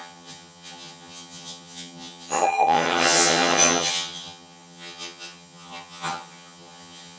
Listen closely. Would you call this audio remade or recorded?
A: remade